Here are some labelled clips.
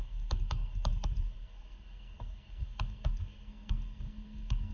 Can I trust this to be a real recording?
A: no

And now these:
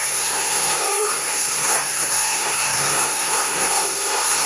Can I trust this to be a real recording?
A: no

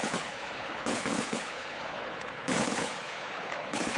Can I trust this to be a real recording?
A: no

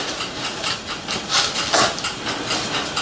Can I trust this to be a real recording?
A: yes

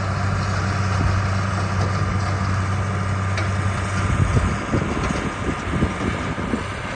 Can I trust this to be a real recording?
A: yes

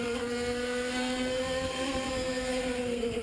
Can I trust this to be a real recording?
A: no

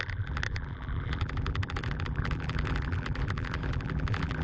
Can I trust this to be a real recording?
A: no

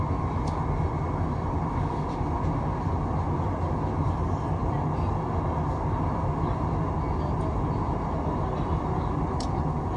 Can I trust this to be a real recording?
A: yes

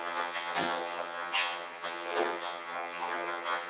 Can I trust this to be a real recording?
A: no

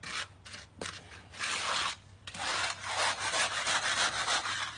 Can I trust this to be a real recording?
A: yes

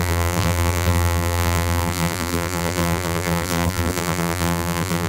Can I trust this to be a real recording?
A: no